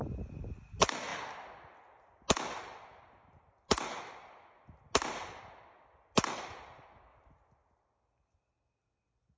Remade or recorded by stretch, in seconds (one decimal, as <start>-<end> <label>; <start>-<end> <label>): 0.0-9.4 recorded